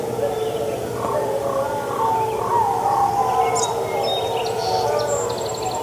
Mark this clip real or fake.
real